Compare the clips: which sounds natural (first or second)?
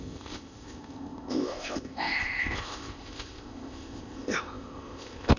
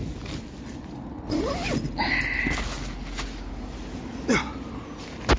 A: second